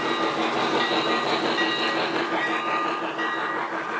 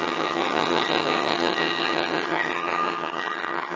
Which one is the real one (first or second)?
first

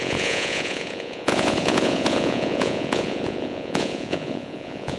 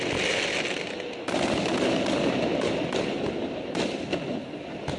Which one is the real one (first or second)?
second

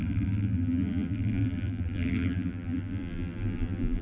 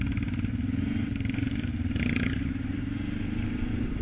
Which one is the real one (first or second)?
second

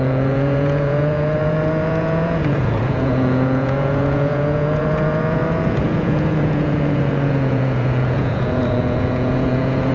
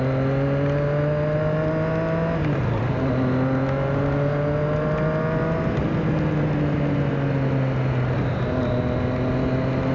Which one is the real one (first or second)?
second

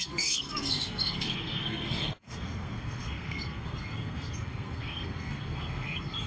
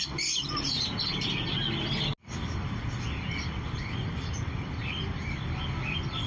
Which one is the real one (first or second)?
second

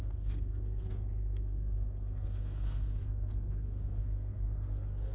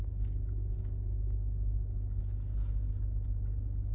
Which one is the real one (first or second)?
second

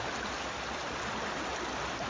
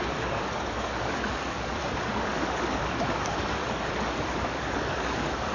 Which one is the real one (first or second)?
first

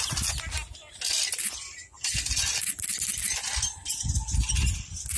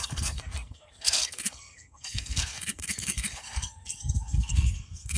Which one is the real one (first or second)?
first